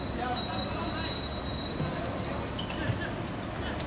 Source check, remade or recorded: recorded